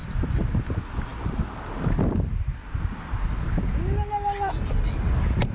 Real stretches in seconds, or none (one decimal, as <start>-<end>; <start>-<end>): 0.0-5.5